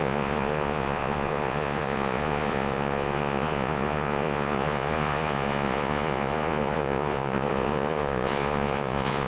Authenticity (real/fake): fake